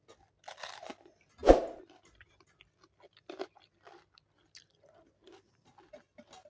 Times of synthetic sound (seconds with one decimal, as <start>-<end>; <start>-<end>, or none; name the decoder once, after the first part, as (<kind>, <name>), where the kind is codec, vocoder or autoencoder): none

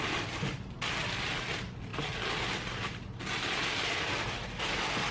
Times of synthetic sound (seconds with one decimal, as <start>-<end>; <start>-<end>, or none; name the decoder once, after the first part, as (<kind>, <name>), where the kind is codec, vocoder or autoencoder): none

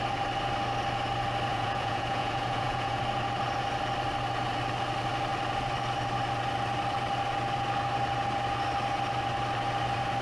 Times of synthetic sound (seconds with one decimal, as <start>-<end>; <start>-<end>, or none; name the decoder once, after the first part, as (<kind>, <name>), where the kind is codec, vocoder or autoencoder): 1.5-3.0 (vocoder, Vocos)

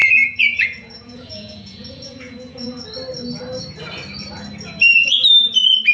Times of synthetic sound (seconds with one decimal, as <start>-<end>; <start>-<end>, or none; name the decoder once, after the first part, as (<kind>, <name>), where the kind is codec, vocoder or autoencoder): 0.0-2.8 (vocoder, Vocos)

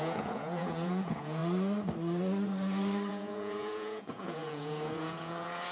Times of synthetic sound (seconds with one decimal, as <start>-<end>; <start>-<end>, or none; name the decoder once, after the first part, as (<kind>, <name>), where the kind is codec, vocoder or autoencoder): 0.0-1.4 (vocoder, Vocos); 3.1-5.7